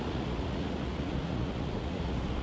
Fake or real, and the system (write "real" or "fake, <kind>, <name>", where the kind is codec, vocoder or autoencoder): fake, vocoder, Vocos